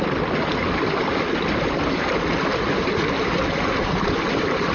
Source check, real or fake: real